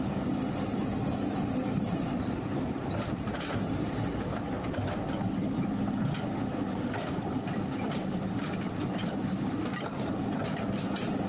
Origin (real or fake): fake